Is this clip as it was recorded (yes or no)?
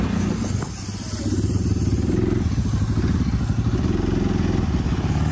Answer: yes